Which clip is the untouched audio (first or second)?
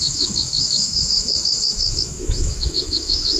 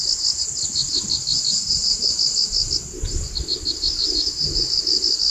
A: second